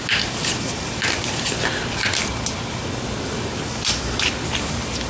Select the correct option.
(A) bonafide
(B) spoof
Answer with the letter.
A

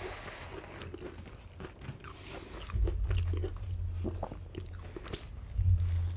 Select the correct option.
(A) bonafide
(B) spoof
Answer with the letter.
A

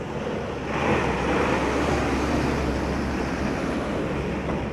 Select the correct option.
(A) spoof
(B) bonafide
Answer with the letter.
B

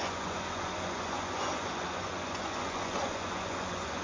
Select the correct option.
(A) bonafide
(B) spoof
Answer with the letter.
B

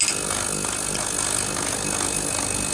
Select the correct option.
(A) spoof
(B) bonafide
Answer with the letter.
B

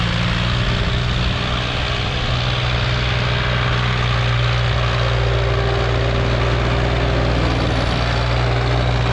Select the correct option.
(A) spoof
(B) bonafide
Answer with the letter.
B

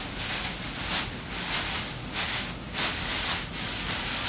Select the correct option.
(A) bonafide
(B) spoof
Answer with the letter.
A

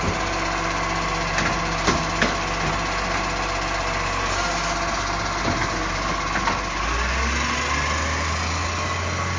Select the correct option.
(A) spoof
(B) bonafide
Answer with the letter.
B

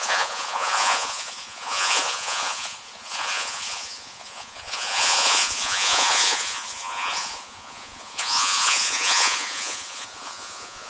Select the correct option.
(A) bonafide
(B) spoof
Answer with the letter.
B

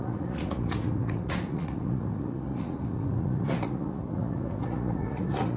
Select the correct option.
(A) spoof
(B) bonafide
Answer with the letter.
A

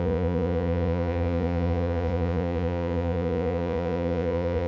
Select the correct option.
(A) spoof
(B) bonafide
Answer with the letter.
A